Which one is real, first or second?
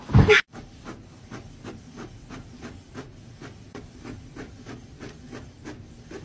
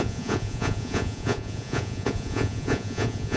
first